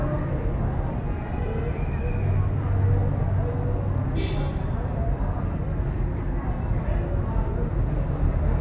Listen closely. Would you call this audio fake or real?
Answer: real